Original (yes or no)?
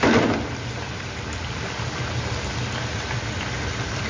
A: yes